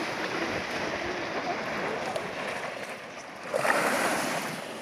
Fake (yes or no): no